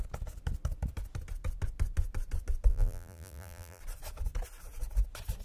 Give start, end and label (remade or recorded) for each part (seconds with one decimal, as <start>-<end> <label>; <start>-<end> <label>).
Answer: 0.0-2.7 recorded; 2.7-3.8 remade; 3.8-5.4 recorded

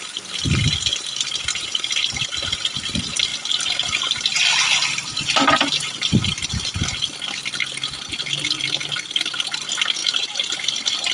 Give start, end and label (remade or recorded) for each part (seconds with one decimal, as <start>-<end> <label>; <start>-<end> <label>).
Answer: 0.0-0.9 recorded; 0.9-1.4 remade; 1.4-10.0 recorded; 10.0-10.7 remade; 10.7-11.1 recorded

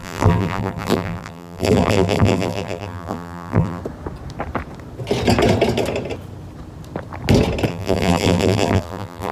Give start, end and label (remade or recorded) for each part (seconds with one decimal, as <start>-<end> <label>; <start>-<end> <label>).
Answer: 0.0-3.8 remade; 3.8-7.7 recorded; 7.7-9.3 remade

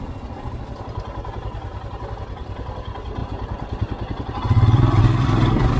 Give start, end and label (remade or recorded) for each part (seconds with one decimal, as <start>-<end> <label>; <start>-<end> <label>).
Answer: 0.0-3.2 recorded; 3.2-5.0 remade; 5.0-5.8 recorded

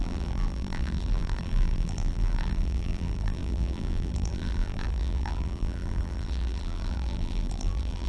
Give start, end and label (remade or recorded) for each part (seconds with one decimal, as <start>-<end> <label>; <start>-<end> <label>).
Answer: 0.0-8.1 remade